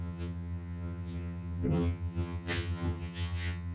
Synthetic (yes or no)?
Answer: yes